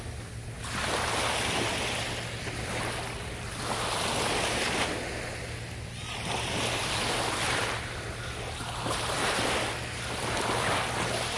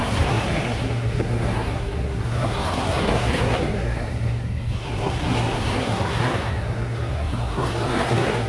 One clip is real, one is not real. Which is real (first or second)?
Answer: first